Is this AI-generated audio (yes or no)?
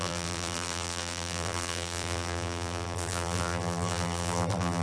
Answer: yes